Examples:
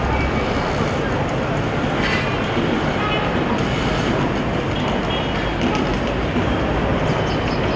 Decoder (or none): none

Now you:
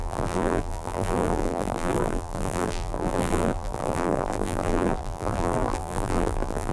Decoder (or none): vocoder, BigVGAN v2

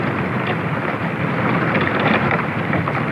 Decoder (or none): none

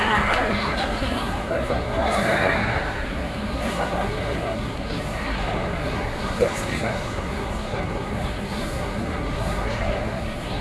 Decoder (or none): codec, SNAC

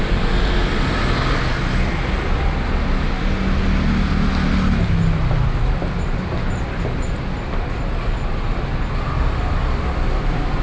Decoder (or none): none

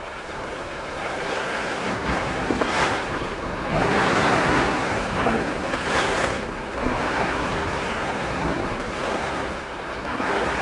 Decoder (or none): codec, SNAC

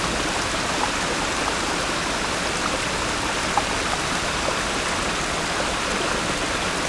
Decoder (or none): none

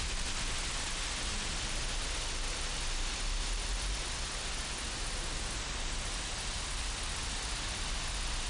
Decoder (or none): none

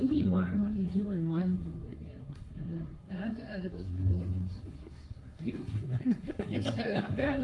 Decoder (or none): codec, SNAC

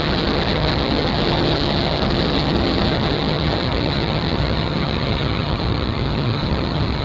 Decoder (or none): vocoder, HiFi-GAN